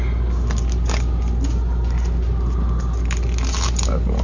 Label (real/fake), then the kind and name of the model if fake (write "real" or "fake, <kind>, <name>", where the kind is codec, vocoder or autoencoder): real